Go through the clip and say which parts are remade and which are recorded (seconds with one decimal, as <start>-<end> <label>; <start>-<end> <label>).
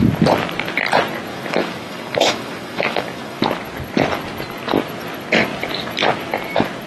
0.0-1.3 recorded; 1.3-3.4 remade; 3.4-6.9 recorded